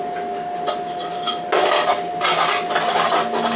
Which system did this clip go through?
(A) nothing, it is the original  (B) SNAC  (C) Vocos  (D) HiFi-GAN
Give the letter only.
A